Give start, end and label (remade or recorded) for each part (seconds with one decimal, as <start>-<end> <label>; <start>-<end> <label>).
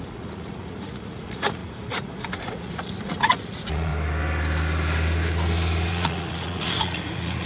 0.0-3.9 remade; 3.9-5.9 recorded; 5.9-7.5 remade